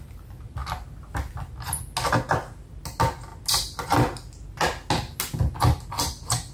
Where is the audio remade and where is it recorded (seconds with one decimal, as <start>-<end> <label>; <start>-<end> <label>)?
0.0-6.5 recorded